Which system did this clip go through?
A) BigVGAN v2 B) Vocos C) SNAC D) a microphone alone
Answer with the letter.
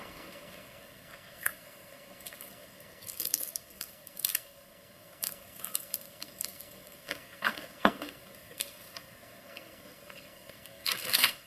C